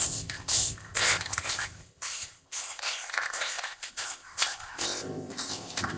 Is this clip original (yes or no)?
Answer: no